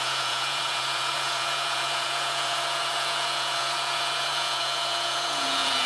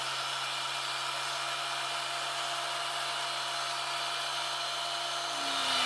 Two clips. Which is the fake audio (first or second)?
first